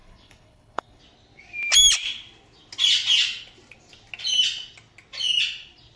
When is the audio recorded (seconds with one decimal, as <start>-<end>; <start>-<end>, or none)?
1.0-6.0